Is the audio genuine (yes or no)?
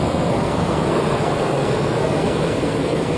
no